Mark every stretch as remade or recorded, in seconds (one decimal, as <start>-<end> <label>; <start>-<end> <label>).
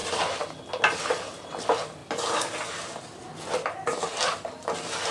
0.0-5.1 recorded